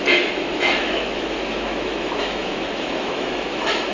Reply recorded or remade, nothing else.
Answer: remade